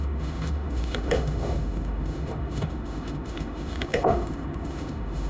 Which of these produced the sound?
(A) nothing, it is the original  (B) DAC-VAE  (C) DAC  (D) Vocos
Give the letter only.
B